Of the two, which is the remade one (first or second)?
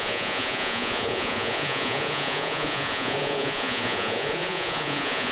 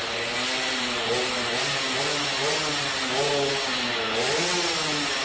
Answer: first